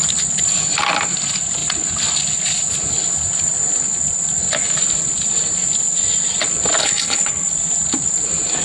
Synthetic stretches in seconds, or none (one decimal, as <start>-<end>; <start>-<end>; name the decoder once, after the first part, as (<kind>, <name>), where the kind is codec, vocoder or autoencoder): 6.8-7.5 (codec, HILCodec)